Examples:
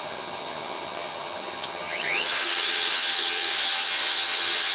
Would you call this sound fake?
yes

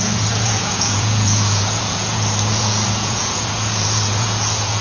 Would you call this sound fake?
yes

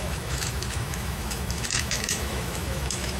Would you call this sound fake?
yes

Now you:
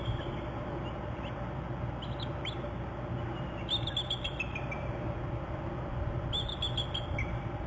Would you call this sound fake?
no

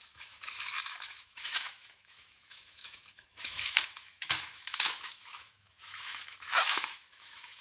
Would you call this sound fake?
yes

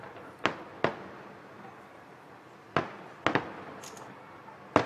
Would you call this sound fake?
no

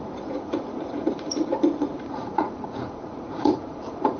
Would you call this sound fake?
yes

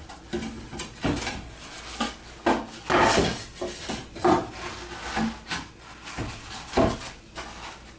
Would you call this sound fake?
no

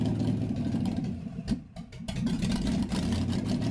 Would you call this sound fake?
no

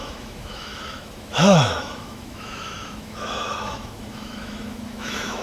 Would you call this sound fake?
yes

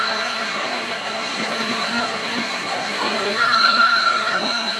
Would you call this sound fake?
yes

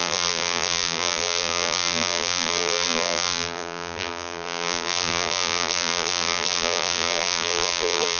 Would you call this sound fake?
yes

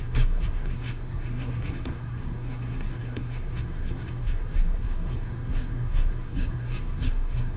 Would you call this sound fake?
yes